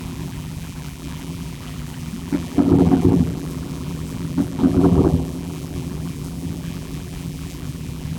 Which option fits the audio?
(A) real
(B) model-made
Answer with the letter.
B